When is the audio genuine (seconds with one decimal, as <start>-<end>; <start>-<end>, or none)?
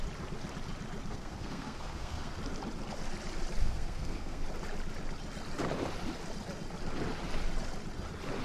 0.0-1.1; 2.3-3.6; 4.4-8.4